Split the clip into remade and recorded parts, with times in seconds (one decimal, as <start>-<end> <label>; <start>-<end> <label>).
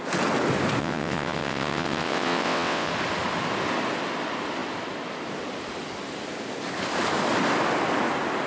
0.0-0.8 recorded; 0.8-2.9 remade; 2.9-8.5 recorded